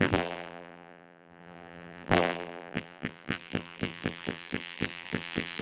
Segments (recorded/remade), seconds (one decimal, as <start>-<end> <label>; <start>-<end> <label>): 0.0-5.6 remade